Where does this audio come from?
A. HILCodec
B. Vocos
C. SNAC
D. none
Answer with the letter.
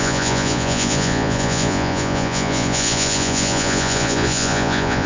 B